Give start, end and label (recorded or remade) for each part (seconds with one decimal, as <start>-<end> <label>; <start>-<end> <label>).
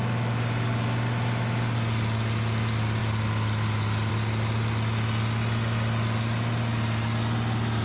0.0-7.8 recorded